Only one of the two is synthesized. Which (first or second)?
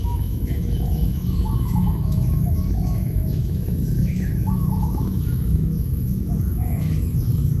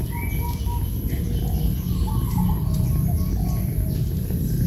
first